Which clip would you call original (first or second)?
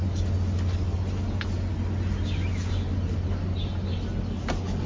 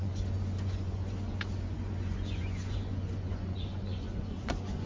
first